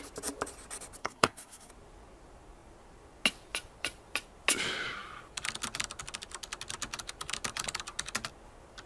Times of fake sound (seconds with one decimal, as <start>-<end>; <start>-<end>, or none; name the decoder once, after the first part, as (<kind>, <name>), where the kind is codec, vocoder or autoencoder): 1.0-1.7 (codec, SNAC)